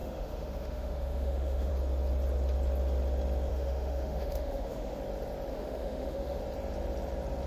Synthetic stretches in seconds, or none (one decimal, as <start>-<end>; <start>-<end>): 0.0-1.7; 3.5-5.0; 5.5-6.4